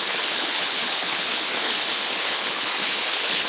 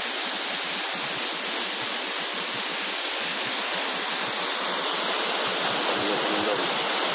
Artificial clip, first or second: first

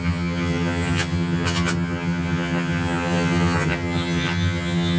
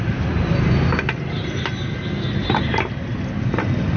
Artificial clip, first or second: first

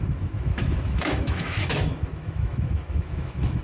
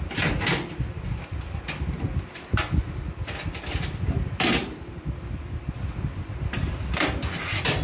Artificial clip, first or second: first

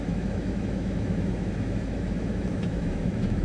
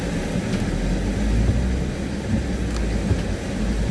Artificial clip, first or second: first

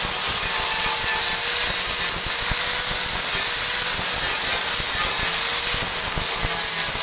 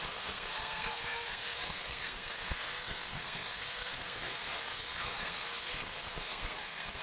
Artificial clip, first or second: second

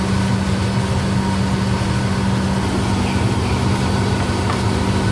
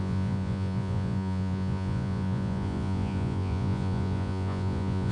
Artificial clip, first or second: second